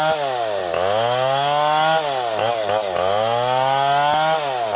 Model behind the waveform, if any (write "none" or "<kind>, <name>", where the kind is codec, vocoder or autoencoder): none